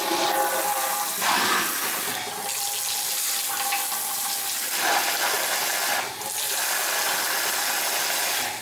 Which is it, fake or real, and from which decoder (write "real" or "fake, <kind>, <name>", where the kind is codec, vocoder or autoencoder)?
real